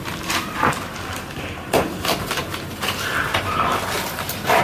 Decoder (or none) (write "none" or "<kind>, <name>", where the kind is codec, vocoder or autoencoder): none